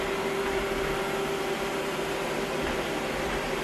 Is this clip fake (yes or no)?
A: yes